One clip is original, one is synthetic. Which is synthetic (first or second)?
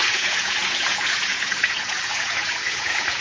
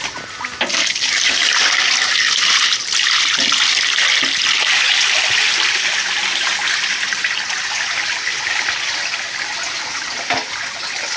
first